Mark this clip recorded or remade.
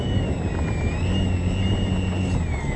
recorded